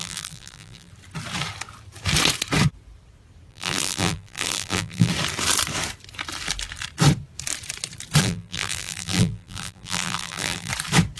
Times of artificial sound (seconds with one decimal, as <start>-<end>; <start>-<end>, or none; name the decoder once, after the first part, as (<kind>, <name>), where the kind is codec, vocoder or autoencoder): 0.0-0.9 (vocoder, BigVGAN v2); 3.5-5.1; 8.2-10.7